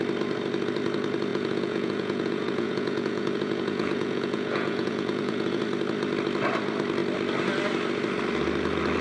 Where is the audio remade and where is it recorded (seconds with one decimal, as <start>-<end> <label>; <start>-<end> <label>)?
0.0-1.3 recorded; 1.3-5.6 remade; 5.6-9.0 recorded

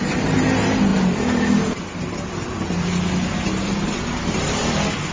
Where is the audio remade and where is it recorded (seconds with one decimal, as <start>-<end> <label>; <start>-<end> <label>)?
0.0-5.1 recorded